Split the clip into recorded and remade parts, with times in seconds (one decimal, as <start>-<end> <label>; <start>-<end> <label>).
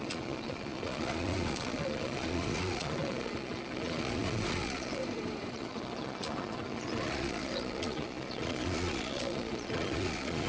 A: 0.0-5.0 remade; 5.0-5.5 recorded; 5.5-10.5 remade